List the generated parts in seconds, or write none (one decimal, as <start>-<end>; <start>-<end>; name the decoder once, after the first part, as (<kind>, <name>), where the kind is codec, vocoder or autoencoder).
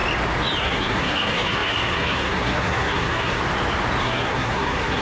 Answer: 0.6-3.4 (codec, SNAC); 4.0-5.0